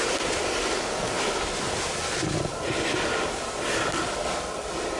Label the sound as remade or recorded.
recorded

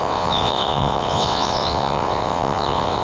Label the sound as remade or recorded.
remade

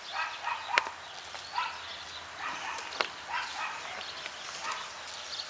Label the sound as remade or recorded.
recorded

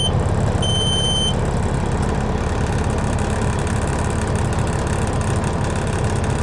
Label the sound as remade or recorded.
recorded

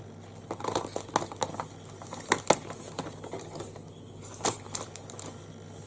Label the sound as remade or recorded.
recorded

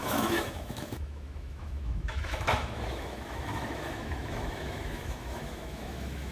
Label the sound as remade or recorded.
remade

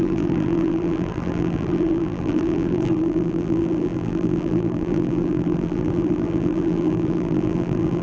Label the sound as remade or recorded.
remade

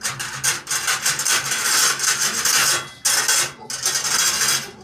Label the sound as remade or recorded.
recorded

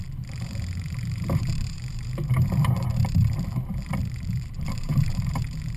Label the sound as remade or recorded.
remade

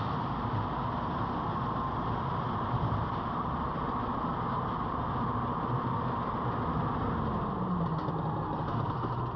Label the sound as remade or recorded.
recorded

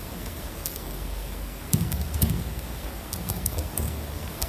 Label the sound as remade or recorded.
remade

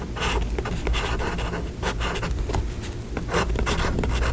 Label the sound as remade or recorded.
recorded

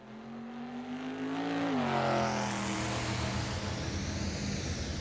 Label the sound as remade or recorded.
recorded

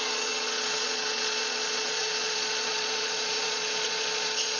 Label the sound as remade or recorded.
remade